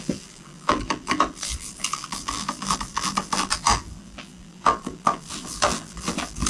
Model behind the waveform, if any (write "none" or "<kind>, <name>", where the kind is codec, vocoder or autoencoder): vocoder, BigVGAN v2